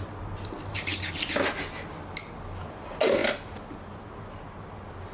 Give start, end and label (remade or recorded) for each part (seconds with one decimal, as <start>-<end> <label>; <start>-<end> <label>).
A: 0.0-5.1 recorded